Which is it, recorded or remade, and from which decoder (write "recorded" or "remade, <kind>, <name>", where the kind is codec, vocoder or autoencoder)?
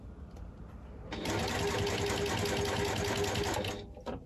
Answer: recorded